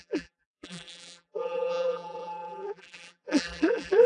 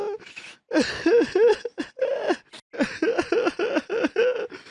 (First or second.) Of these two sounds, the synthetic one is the first